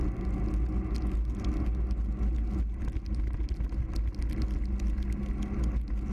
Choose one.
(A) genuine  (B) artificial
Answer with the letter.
A